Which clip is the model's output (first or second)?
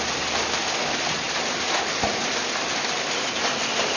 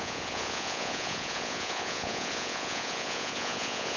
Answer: second